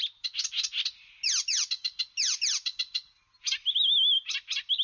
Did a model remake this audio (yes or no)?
no